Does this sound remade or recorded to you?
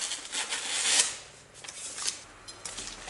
recorded